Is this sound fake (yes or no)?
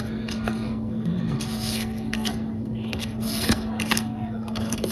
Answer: yes